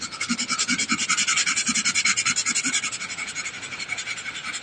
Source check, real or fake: real